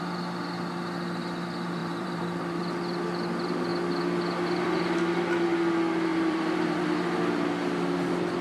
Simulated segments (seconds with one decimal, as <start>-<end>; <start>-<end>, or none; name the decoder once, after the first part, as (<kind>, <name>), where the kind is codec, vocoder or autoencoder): 1.8-2.6 (vocoder, BigVGAN v2); 6.1-6.8